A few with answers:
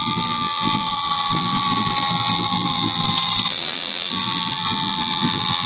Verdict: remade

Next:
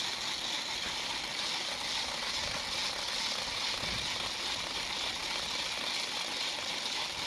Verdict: recorded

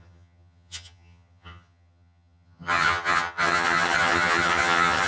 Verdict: remade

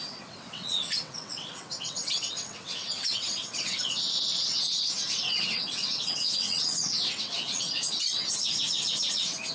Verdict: remade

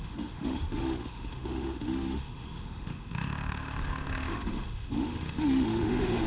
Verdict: remade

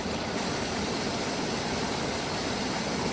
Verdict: recorded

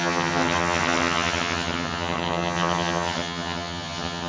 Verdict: remade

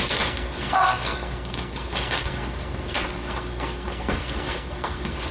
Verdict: remade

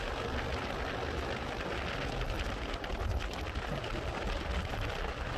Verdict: recorded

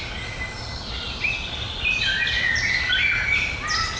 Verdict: recorded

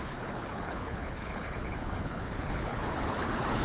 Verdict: remade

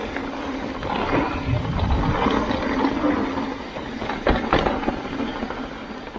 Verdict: recorded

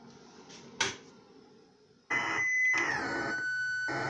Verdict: recorded